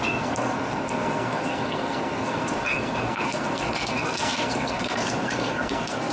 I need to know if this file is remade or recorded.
remade